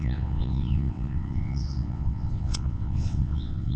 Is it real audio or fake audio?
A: fake